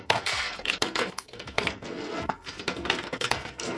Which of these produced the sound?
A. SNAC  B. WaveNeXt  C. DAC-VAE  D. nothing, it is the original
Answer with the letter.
A